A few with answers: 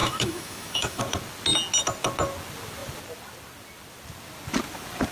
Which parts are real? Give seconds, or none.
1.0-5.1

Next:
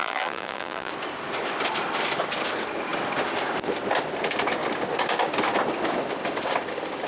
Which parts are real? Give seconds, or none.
0.9-7.1